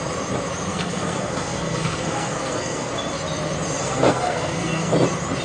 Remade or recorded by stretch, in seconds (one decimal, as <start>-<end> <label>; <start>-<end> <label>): 0.0-0.7 recorded; 0.7-2.9 remade; 2.9-3.8 recorded; 3.8-4.9 remade; 4.9-5.4 recorded